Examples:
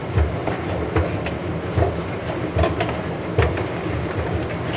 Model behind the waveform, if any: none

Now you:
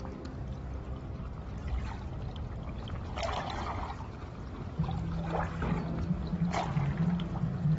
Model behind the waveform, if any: none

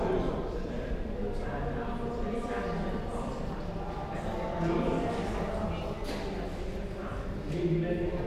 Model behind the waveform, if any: none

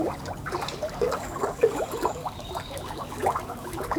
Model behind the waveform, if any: codec, DAC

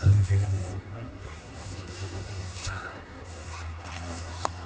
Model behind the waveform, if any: codec, SNAC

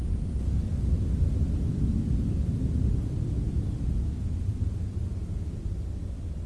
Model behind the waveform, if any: none